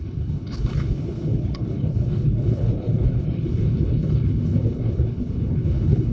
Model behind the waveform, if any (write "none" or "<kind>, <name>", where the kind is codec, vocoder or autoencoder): codec, HILCodec